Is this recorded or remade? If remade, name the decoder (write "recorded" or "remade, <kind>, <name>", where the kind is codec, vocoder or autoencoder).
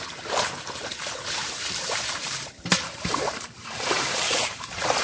remade, vocoder, BigVGAN v2